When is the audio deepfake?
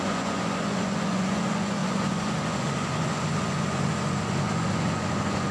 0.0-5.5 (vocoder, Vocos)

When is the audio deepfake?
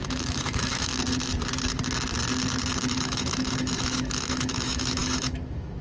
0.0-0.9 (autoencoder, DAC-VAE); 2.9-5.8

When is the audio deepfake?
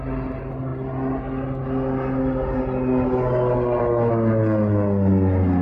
none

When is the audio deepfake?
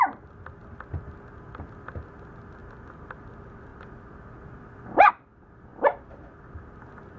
none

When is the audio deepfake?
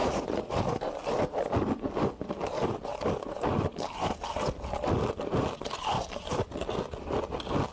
0.0-0.6 (vocoder, Vocos)